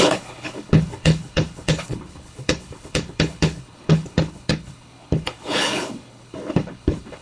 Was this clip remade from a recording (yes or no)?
yes